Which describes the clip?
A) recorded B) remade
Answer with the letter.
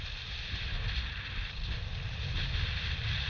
A